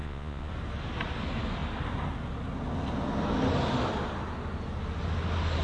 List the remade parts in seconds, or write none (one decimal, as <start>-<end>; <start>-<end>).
0.0-0.5